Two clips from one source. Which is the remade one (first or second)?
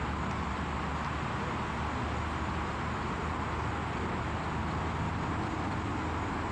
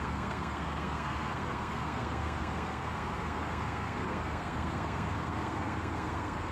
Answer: second